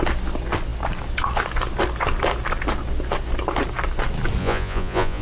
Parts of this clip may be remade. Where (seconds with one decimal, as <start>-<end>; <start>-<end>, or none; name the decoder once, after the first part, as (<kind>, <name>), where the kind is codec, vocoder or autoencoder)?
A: 4.4-5.2 (vocoder, Vocos)